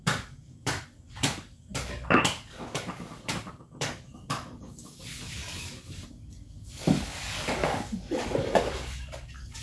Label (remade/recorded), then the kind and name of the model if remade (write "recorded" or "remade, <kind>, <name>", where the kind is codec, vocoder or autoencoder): remade, codec, DAC